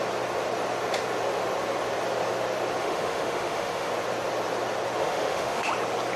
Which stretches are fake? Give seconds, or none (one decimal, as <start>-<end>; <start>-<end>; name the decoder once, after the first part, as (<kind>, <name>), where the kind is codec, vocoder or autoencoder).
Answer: 2.8-3.9 (autoencoder, DAC-VAE); 5.0-5.7